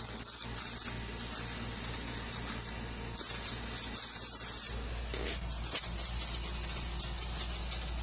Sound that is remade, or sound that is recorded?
recorded